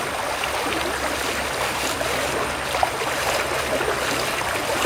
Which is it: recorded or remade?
recorded